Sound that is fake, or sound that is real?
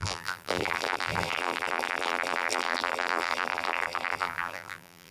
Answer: fake